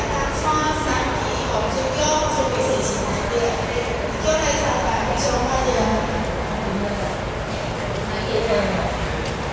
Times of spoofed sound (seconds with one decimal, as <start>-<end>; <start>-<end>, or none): 2.3-3.3